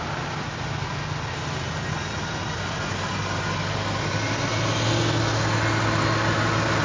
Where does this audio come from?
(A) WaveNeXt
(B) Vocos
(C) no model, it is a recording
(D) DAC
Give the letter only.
C